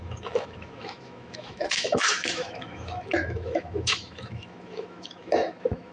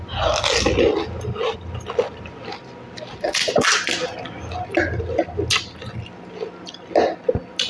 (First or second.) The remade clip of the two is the first